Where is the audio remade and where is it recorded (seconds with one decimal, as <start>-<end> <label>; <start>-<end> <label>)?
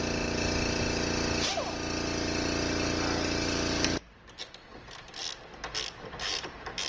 0.0-6.9 recorded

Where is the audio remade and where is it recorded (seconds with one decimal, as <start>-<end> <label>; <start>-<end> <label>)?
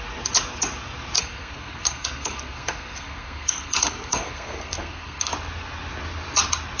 0.0-1.2 recorded; 1.2-5.3 remade; 5.3-6.8 recorded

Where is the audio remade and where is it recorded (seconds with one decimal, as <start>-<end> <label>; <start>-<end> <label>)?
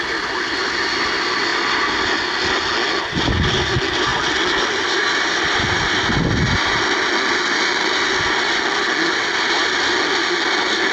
0.0-10.9 recorded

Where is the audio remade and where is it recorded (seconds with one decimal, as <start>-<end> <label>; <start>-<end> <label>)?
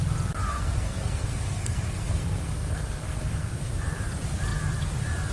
0.0-0.5 recorded; 0.5-3.7 remade; 3.7-5.3 recorded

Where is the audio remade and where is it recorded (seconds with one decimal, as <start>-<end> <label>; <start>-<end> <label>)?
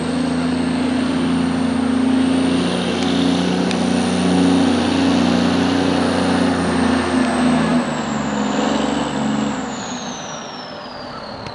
0.0-11.5 recorded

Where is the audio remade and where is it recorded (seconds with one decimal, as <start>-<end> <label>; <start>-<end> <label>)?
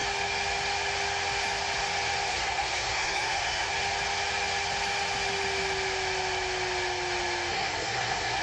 0.0-2.3 recorded; 2.3-3.7 remade; 3.7-7.5 recorded; 7.5-8.4 remade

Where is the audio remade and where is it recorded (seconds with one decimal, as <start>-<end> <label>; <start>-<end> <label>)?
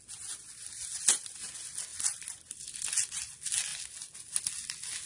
0.0-5.1 recorded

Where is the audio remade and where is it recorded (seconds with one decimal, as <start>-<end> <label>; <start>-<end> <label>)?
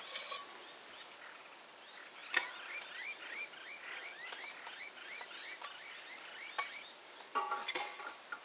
0.0-8.4 recorded